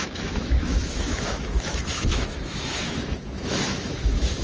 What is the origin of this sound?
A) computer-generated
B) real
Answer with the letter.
A